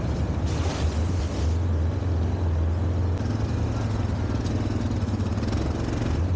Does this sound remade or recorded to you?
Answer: recorded